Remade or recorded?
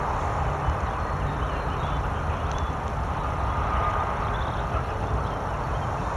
recorded